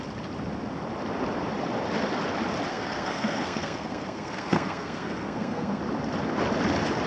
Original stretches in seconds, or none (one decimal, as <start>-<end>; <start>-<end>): 0.0-2.7; 5.8-7.1